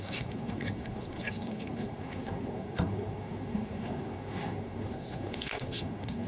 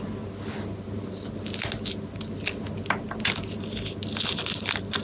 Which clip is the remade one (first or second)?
first